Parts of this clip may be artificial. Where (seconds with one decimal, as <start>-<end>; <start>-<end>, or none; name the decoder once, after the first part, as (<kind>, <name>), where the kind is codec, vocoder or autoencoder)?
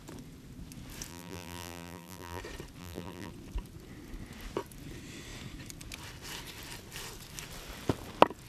1.1-2.4 (vocoder, BigVGAN v2); 2.8-3.3